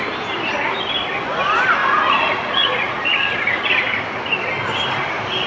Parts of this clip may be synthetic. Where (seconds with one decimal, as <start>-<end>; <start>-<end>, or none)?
1.8-3.7